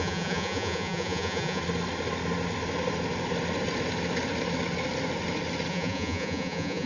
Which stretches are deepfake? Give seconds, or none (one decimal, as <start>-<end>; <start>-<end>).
0.0-1.6; 5.7-6.9